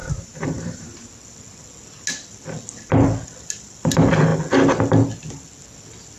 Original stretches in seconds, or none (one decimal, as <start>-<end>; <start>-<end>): 1.1-6.2